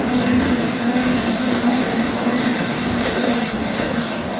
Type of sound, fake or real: fake